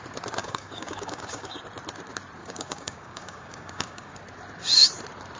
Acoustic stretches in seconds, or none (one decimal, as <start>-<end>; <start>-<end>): 0.0-0.4; 1.6-2.4; 4.2-5.4